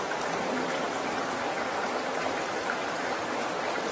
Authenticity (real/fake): fake